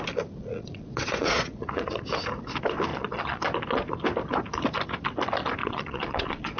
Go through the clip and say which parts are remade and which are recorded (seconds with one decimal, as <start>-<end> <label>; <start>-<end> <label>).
0.0-0.4 recorded; 0.4-2.0 remade; 2.0-2.9 recorded; 2.9-3.4 remade; 3.4-5.6 recorded; 5.6-6.6 remade